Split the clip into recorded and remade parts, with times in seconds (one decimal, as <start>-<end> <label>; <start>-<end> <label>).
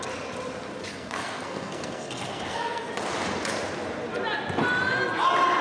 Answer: 0.0-0.9 recorded; 0.9-2.9 remade; 2.9-5.6 recorded